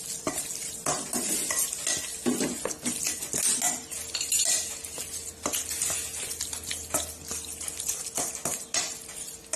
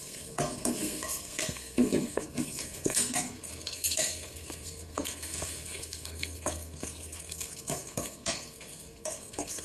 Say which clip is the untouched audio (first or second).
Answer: first